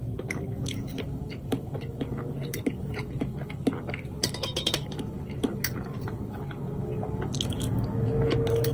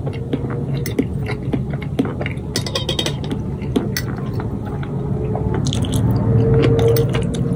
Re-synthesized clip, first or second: first